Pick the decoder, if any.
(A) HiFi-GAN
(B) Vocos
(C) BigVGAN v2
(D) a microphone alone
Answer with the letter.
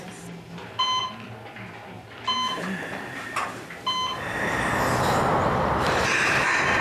D